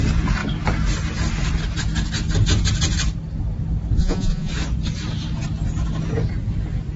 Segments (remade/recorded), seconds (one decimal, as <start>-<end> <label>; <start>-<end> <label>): 0.0-4.0 recorded; 4.0-4.5 remade; 4.5-7.0 recorded